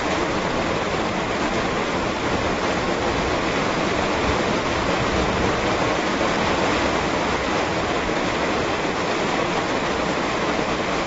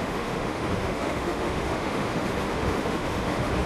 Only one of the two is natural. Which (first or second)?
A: first